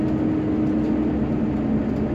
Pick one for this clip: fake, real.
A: real